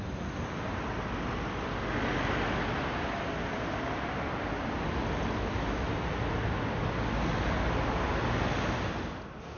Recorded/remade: recorded